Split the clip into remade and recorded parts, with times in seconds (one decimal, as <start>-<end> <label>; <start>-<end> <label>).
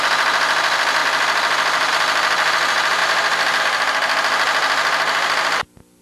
0.0-6.0 recorded